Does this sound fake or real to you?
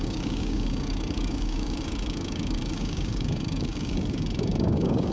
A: fake